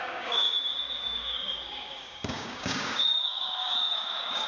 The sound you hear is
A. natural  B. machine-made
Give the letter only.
B